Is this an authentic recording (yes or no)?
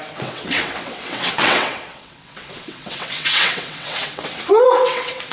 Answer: no